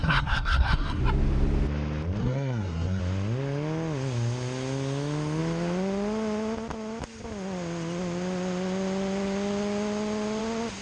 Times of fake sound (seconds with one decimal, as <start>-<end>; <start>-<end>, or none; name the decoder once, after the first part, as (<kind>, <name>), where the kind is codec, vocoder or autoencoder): 0.0-1.0 (codec, SNAC); 2.2-3.0